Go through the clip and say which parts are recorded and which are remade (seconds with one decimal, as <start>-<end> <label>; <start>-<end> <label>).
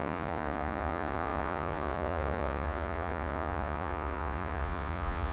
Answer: 0.0-5.3 remade